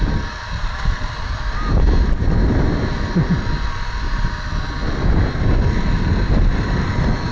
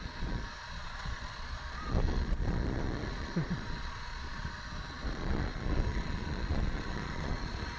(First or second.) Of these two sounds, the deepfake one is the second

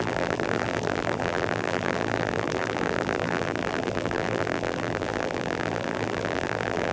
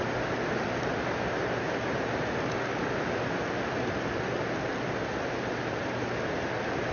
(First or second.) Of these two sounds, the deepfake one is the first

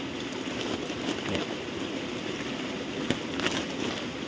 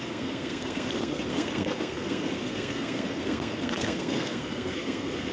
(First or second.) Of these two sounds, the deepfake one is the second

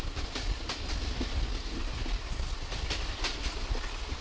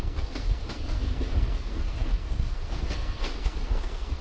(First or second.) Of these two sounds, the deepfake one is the second